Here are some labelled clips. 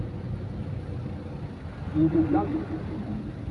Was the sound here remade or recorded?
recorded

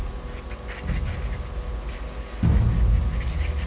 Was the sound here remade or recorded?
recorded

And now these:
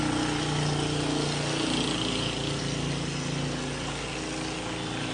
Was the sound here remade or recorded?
recorded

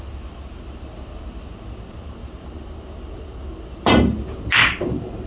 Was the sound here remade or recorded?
recorded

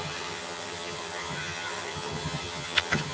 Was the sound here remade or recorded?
remade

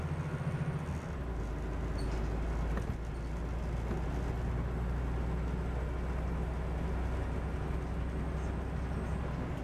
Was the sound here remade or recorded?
recorded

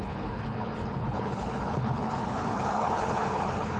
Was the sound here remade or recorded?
remade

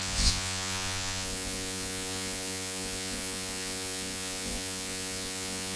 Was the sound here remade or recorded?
remade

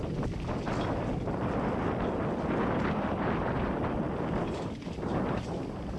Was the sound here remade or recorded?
recorded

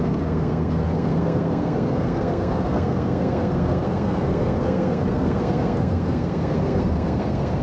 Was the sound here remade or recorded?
remade